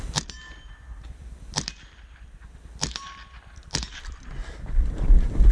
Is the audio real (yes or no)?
yes